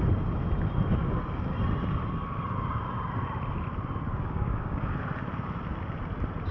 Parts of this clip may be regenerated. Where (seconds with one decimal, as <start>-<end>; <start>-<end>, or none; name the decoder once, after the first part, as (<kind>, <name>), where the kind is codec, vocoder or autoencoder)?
4.1-5.0 (codec, DAC)